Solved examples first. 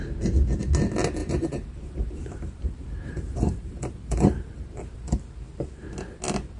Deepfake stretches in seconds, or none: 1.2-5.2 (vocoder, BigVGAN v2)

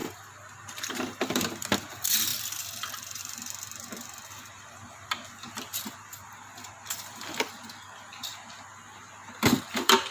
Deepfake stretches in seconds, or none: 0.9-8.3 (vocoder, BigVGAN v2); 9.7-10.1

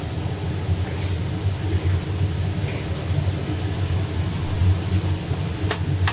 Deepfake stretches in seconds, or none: none

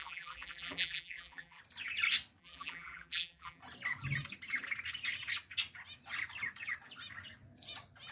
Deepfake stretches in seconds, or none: 0.0-1.6 (vocoder, BigVGAN v2); 2.4-3.6

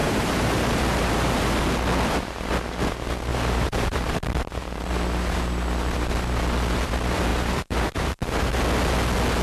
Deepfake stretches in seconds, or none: 0.0-1.5 (vocoder, BigVGAN v2); 3.3-4.8; 7.3-8.5